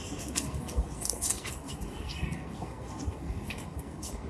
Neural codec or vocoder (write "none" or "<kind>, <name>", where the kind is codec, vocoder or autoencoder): codec, SNAC